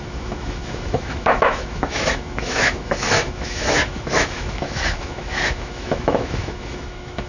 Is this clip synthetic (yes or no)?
yes